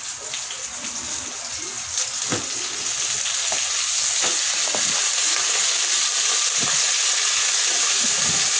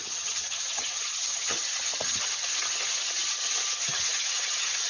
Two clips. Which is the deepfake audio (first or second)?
second